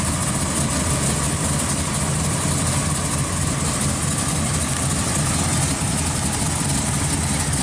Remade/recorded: recorded